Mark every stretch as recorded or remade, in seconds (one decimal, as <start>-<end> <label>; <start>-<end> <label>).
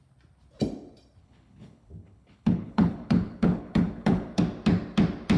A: 0.0-1.2 recorded; 1.2-4.4 remade; 4.4-5.4 recorded